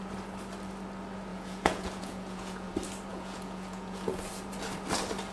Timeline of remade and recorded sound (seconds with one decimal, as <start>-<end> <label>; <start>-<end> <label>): 0.0-1.3 recorded; 1.3-2.7 remade; 2.7-3.1 recorded; 3.1-4.2 remade; 4.2-5.3 recorded